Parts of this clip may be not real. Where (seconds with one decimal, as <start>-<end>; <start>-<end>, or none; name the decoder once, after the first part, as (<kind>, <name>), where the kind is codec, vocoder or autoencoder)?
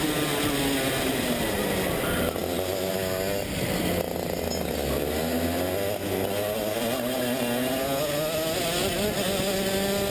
none